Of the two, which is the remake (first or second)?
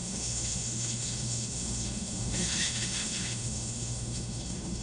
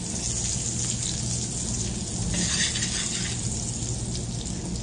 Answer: first